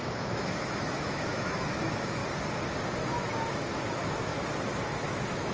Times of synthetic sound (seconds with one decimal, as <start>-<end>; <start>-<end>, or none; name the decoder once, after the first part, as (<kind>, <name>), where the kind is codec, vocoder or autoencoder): 0.0-2.2 (autoencoder, DAC-VAE); 3.1-4.3; 5.0-5.5